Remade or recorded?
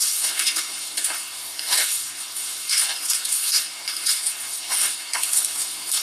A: remade